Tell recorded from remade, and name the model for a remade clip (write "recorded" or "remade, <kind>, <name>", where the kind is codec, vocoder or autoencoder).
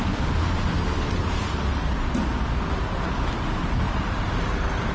recorded